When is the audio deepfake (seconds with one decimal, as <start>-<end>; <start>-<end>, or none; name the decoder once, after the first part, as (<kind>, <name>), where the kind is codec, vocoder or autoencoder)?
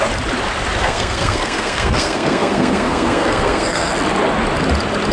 0.8-3.9 (codec, SNAC)